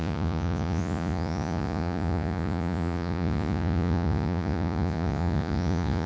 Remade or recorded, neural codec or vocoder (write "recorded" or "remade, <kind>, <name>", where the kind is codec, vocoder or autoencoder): remade, vocoder, Vocos